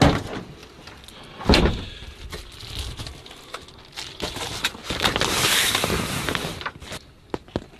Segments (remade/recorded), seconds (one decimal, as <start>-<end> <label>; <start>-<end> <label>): 0.0-7.8 recorded